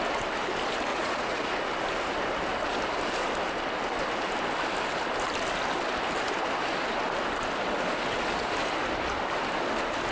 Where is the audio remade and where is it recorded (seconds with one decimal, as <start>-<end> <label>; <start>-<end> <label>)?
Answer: 0.0-0.9 recorded; 0.9-1.5 remade; 1.5-10.1 recorded